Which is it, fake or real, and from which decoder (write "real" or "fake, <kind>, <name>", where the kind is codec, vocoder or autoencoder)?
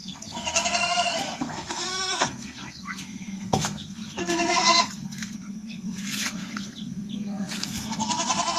fake, codec, SNAC